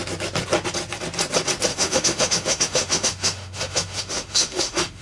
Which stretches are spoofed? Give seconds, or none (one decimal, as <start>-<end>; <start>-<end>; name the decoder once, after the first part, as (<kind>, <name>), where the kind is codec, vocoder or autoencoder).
1.7-5.0 (autoencoder, DAC-VAE)